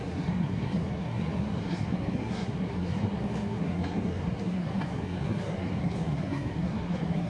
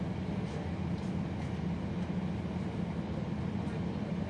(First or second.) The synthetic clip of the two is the first